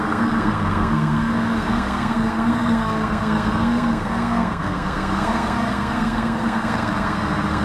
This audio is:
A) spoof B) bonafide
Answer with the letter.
A